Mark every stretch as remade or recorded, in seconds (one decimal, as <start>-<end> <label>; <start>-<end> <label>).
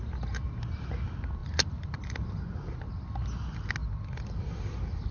0.0-5.1 recorded